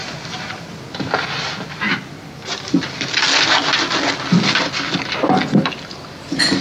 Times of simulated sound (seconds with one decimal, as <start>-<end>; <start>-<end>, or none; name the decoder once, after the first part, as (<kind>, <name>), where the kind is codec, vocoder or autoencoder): none

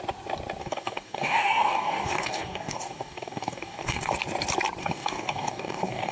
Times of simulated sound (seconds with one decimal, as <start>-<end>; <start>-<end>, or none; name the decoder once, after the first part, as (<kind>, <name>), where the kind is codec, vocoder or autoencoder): 0.6-4.1 (codec, DAC); 4.8-6.1